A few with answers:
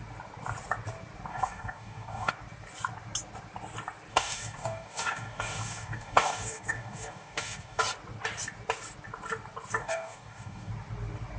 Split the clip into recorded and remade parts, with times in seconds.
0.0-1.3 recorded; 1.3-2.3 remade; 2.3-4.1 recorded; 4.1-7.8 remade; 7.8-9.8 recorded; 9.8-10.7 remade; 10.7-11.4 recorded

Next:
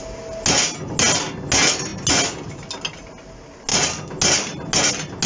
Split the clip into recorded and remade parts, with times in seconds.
0.0-5.3 recorded

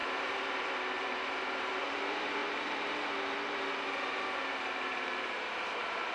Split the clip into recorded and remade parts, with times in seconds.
0.0-6.1 remade

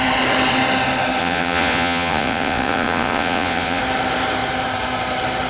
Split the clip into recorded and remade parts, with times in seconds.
0.0-1.2 recorded; 1.2-3.8 remade; 3.8-5.5 recorded

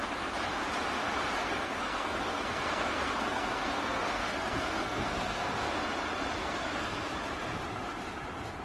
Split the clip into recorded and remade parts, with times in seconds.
0.0-1.4 recorded; 1.4-5.7 remade; 5.7-6.4 recorded; 6.4-7.1 remade; 7.1-8.6 recorded

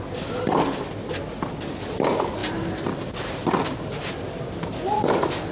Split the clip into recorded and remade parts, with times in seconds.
0.0-5.5 recorded

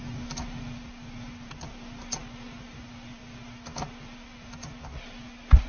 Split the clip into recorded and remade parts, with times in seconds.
0.0-5.7 recorded